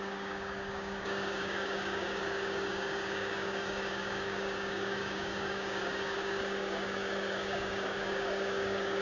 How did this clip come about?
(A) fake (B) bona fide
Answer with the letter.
A